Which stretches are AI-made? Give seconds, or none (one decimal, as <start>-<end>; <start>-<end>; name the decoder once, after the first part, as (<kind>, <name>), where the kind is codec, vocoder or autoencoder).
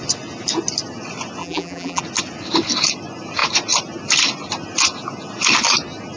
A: 1.4-2.0 (vocoder, BigVGAN v2)